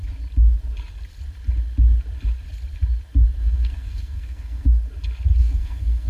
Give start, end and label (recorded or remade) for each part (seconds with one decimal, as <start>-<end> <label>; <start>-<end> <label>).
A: 0.0-3.4 recorded; 3.4-4.7 remade; 4.7-5.4 recorded; 5.4-6.1 remade